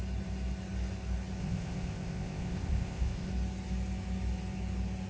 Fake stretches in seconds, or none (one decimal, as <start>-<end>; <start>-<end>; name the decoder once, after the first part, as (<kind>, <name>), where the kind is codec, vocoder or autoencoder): 1.4-3.3 (codec, ZipCodec)